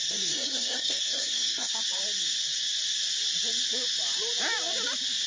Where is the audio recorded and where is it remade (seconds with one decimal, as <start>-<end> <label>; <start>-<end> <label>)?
0.0-1.7 remade; 1.7-5.3 recorded